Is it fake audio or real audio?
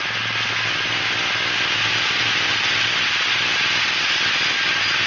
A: real